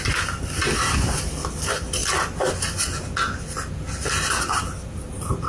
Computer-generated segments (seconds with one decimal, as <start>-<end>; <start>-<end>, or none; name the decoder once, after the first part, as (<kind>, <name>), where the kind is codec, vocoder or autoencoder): none